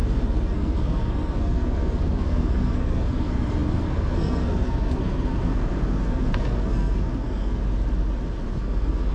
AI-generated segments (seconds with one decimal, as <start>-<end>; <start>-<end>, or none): 0.0-7.6; 8.5-9.1